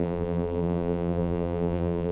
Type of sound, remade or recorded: remade